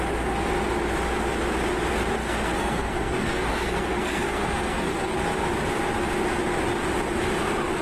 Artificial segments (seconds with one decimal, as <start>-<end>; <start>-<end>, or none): 2.2-5.2